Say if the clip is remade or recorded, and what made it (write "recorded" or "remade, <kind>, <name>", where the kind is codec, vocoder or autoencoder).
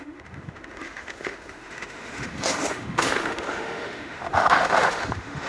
remade, autoencoder, DAC-VAE